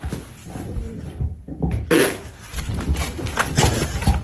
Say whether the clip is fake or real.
real